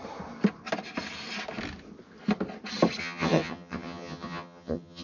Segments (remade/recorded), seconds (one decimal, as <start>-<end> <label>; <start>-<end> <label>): 0.0-3.0 recorded; 3.0-5.0 remade